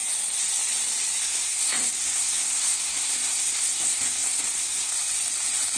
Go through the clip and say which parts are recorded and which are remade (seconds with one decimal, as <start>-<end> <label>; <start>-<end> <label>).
0.0-1.2 recorded; 1.2-4.9 remade; 4.9-5.8 recorded